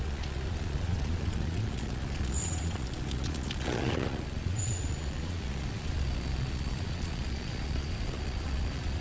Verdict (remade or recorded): remade